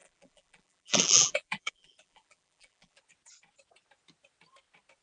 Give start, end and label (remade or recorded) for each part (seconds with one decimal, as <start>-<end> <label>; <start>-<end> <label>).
0.0-3.0 remade; 3.0-5.0 recorded